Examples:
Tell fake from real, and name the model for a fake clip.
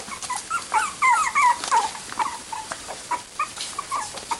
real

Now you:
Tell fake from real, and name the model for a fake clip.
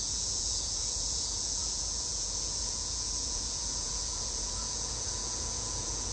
fake, vocoder, Vocos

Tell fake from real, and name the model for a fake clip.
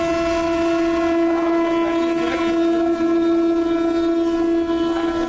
real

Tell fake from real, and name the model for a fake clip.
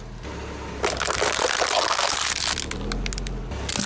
real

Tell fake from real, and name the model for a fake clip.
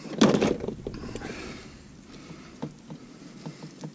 real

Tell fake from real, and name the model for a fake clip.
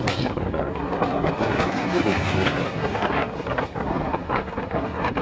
fake, codec, SNAC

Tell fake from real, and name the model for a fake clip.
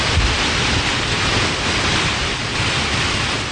real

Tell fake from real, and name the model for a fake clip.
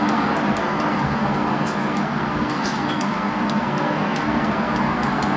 fake, codec, SNAC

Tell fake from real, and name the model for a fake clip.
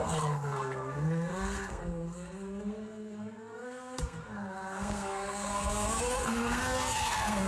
fake, codec, SNAC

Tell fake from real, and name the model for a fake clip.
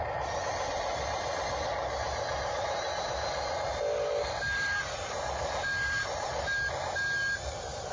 real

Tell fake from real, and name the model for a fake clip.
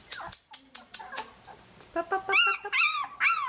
real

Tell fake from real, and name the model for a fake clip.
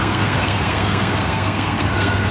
fake, codec, SNAC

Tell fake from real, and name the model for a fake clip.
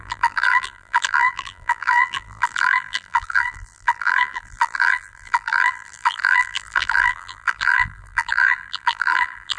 fake, vocoder, BigVGAN v2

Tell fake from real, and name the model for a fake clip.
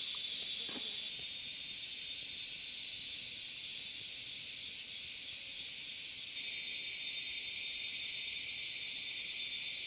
real